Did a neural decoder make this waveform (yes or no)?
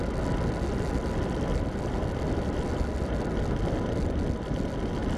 no